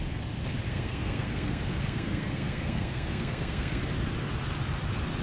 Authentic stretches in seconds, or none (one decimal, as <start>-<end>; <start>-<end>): 0.0-0.7; 3.8-5.2